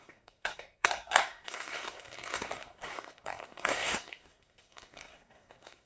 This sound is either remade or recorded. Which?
remade